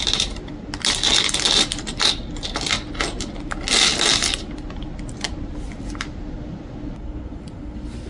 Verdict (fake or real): real